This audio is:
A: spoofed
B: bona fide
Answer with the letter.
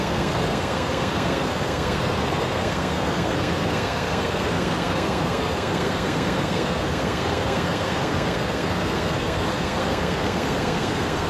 A